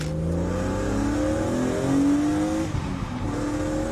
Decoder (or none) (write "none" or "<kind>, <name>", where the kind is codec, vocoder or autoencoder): none